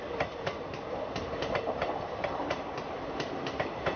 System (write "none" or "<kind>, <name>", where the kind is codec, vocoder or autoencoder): none